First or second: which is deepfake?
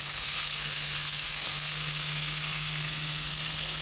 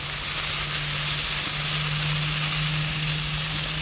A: first